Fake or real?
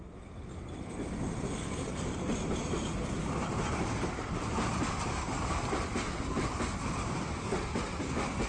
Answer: real